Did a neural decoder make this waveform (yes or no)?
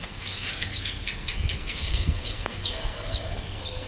yes